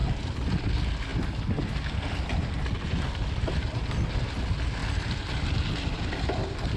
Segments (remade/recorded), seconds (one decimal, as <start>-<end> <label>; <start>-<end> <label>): 0.0-6.8 recorded